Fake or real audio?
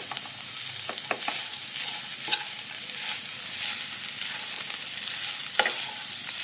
real